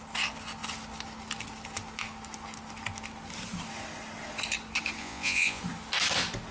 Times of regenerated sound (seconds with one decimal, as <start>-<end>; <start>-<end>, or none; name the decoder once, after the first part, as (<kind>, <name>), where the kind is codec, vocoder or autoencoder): 5.0-5.6 (vocoder, Vocos)